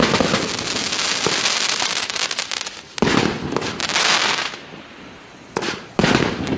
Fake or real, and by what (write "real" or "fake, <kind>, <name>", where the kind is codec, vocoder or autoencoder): real